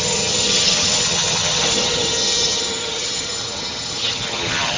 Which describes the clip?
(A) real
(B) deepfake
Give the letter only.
B